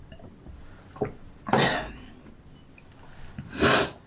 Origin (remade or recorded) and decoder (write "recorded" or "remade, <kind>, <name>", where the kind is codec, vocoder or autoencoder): recorded